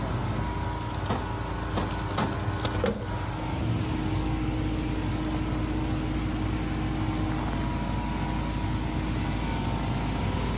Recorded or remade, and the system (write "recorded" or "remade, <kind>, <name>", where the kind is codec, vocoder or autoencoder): recorded